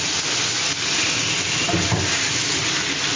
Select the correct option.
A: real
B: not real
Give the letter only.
A